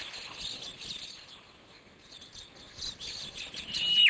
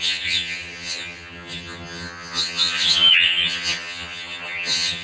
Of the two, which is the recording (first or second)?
first